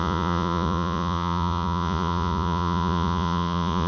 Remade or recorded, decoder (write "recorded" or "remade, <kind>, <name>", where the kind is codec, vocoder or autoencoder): remade, vocoder, Vocos